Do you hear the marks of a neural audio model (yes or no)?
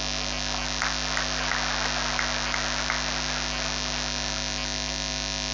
no